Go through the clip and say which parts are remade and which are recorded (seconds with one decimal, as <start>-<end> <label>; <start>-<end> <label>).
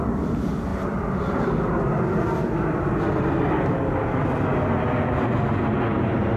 0.0-6.4 recorded